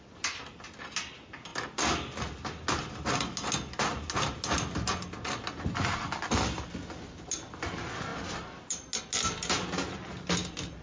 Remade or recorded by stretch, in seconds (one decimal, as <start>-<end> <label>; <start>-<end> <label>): 0.0-10.8 recorded